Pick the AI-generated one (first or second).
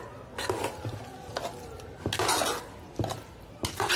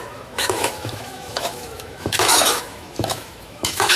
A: second